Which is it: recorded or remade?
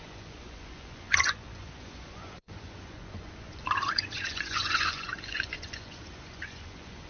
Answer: remade